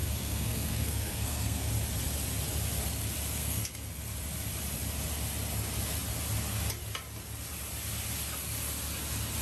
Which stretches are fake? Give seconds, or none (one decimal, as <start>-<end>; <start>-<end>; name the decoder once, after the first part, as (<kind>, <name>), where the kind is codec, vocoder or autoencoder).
0.0-1.7 (codec, SNAC); 3.4-4.0